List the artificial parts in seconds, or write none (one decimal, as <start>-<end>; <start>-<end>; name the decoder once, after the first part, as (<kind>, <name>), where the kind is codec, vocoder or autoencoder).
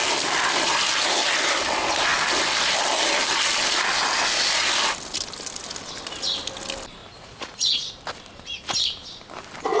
7.0-7.9 (vocoder, Vocos)